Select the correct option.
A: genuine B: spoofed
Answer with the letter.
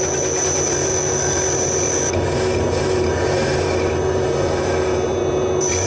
A